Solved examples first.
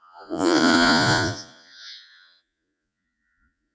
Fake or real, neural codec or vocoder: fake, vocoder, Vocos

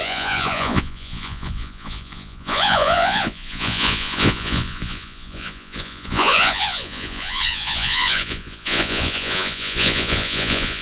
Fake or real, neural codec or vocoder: fake, vocoder, Vocos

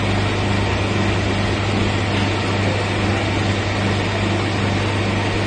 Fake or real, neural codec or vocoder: real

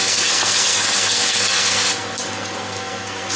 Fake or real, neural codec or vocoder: fake, codec, SNAC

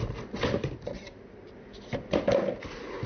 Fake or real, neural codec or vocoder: real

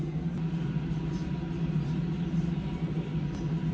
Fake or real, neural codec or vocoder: real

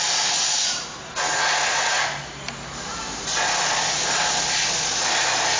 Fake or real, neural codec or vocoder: real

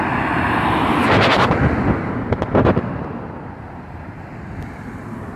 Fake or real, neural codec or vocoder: real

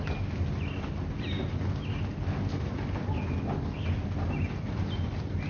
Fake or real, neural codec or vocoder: real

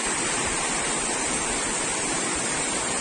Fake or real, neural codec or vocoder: real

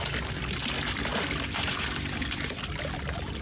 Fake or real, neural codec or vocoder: real